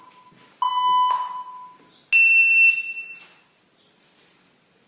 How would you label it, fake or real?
real